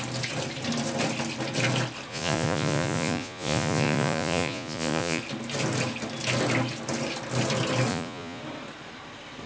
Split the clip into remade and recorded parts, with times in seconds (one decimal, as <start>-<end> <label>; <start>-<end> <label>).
0.0-2.1 recorded; 2.1-5.2 remade; 5.2-7.9 recorded; 7.9-8.4 remade; 8.4-9.5 recorded